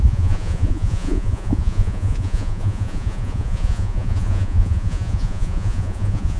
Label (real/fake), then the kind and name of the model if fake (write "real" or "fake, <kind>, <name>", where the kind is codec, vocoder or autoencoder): fake, vocoder, Vocos